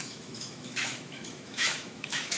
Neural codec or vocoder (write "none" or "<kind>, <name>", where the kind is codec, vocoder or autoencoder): autoencoder, DAC-VAE